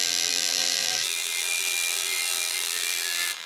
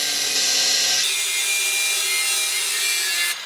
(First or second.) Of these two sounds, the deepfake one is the first